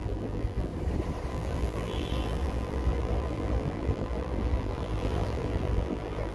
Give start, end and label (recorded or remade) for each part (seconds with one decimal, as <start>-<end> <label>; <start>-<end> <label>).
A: 0.0-0.7 remade; 0.7-1.3 recorded; 1.3-6.3 remade